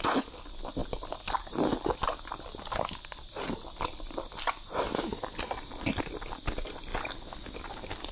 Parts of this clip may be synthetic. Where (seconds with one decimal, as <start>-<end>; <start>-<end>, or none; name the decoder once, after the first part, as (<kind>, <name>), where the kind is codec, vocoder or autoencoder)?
none